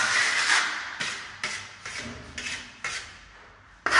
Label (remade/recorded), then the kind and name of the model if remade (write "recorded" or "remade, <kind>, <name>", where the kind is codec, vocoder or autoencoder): remade, vocoder, BigVGAN v2